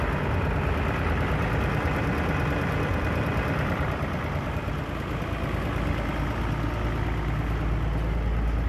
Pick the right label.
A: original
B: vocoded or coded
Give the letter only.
A